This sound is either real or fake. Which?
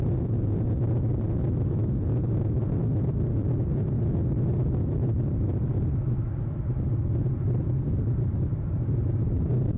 fake